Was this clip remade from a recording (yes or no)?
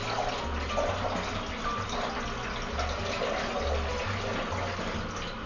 no